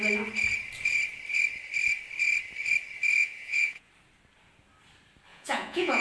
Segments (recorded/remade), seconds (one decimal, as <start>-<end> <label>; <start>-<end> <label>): 0.0-3.2 recorded; 3.2-3.9 remade; 3.9-5.3 recorded; 5.3-6.0 remade